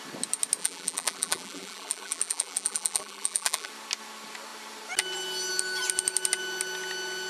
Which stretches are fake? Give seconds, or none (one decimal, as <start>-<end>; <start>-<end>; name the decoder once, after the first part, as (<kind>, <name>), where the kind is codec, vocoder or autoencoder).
0.6-3.7 (vocoder, BigVGAN v2)